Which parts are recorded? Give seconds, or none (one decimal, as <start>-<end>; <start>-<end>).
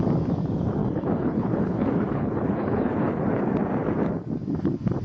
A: 0.0-0.8; 3.5-5.0